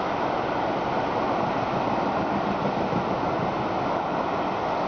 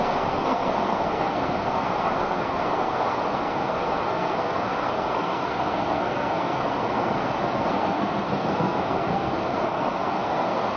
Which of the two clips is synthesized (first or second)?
second